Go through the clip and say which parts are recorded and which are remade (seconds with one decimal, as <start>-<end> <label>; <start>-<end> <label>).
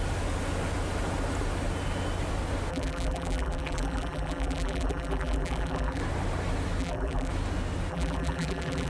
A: 0.0-2.7 recorded; 2.7-6.0 remade; 6.0-6.8 recorded; 6.8-7.3 remade; 7.3-7.9 recorded; 7.9-8.9 remade